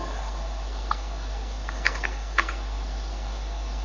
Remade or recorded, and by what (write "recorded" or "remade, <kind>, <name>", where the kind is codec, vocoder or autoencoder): remade, codec, SNAC